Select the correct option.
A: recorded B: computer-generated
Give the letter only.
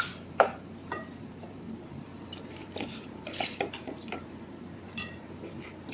B